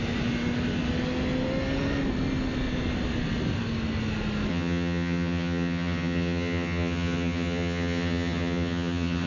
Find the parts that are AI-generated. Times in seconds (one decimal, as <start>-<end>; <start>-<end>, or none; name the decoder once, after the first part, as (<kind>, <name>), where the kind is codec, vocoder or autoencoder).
4.5-9.3 (vocoder, HiFi-GAN)